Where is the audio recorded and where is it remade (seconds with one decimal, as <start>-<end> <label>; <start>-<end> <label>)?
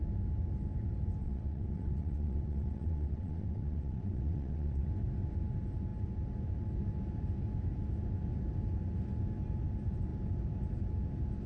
0.0-1.2 recorded; 1.2-4.9 remade; 4.9-11.5 recorded